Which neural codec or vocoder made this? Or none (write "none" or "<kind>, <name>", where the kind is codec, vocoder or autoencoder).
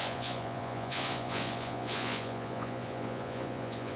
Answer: vocoder, Vocos